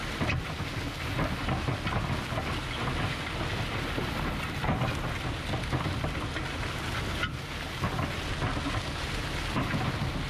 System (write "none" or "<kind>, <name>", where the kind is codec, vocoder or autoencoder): none